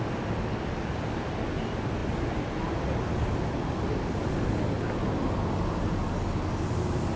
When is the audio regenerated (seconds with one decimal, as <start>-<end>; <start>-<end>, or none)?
none